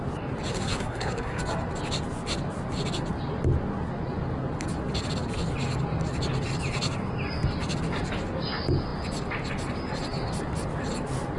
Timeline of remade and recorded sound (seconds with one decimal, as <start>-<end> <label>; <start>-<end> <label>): 0.0-0.5 recorded; 0.5-1.4 remade; 1.4-11.4 recorded